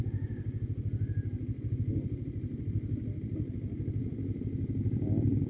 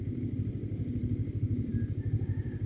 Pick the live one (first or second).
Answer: first